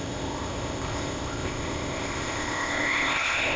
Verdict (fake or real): fake